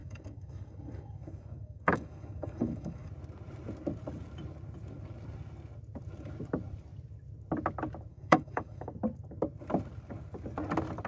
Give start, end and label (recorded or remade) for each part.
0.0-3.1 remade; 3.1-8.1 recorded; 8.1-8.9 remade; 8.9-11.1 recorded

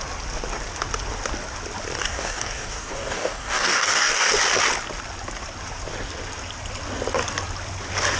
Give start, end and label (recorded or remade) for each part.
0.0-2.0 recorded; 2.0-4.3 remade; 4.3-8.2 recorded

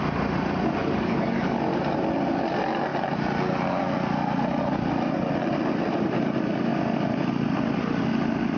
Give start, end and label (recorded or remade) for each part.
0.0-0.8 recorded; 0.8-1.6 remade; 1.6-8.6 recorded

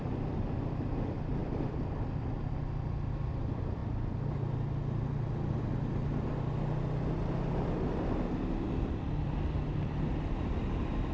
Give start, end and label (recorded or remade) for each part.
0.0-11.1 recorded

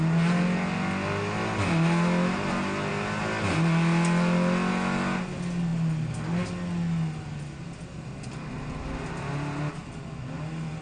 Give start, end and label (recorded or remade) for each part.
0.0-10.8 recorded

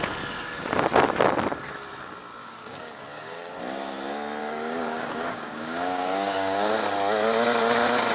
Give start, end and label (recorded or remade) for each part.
0.0-2.4 recorded; 2.4-3.6 remade; 3.6-4.4 recorded; 4.4-6.7 remade; 6.7-8.1 recorded

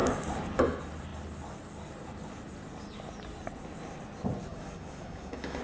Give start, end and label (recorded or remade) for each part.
0.0-4.5 recorded; 4.5-5.6 remade